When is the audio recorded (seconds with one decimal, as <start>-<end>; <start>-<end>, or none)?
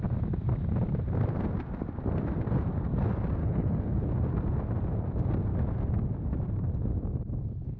0.0-3.4; 4.1-7.8